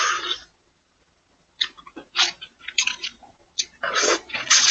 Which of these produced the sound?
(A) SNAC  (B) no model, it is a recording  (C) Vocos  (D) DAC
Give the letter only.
C